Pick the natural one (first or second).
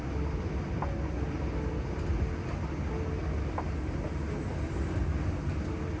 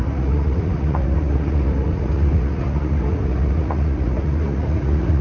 first